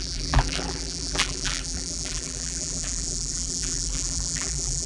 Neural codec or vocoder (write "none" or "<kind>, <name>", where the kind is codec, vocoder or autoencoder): vocoder, BigVGAN v2